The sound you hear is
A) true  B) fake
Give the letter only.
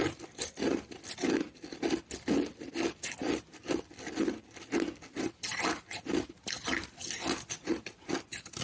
A